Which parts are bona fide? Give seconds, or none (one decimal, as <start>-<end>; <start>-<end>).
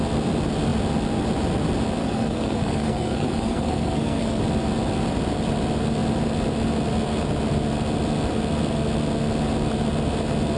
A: 0.0-2.0; 4.4-10.6